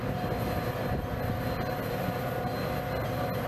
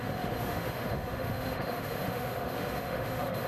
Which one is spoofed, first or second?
second